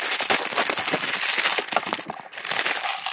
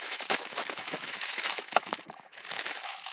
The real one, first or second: first